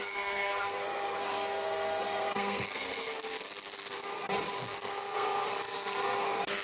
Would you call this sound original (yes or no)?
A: no